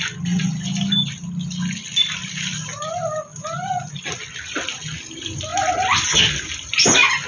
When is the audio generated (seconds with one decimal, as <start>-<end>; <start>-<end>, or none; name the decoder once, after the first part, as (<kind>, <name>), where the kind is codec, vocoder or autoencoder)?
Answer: none